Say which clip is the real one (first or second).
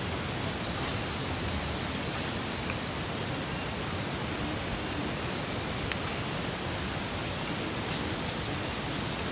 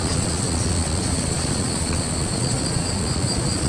first